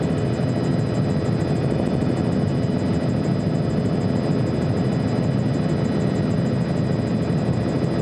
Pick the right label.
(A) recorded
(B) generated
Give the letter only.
A